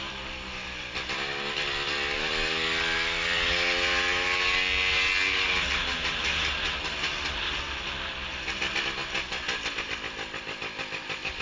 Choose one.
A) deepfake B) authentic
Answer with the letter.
B